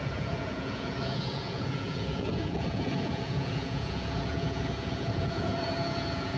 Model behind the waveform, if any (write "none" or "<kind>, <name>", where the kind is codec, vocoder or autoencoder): vocoder, Vocos